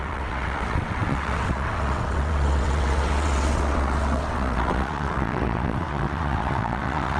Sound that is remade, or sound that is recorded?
remade